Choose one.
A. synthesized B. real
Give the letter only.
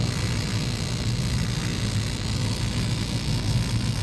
B